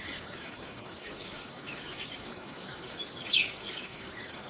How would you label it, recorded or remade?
remade